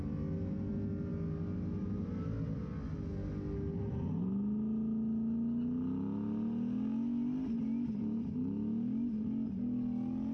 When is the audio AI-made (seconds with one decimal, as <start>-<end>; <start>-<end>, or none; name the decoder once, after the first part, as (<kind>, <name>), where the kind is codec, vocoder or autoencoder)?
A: none